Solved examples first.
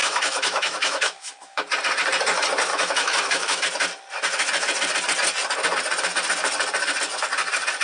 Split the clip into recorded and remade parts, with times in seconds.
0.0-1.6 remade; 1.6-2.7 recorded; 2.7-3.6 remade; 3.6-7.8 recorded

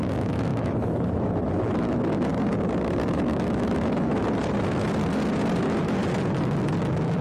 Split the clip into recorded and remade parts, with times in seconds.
0.0-2.3 remade; 2.3-3.1 recorded; 3.1-4.2 remade; 4.2-5.6 recorded; 5.6-6.0 remade; 6.0-6.8 recorded; 6.8-7.2 remade

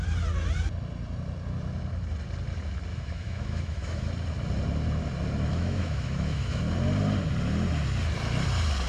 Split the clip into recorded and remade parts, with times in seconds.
0.0-2.9 recorded; 2.9-4.1 remade; 4.1-5.5 recorded; 5.5-6.6 remade; 6.6-8.9 recorded